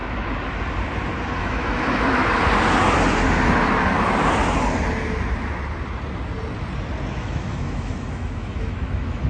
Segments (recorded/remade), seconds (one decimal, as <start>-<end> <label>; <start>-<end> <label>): 0.0-1.4 recorded; 1.4-2.2 remade; 2.2-7.1 recorded; 7.1-9.3 remade